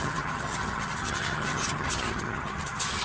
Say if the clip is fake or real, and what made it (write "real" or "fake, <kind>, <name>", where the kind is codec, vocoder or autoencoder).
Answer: fake, vocoder, HiFi-GAN